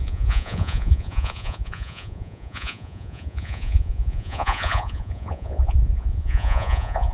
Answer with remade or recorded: remade